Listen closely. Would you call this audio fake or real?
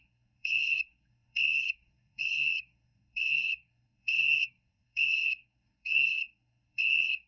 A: fake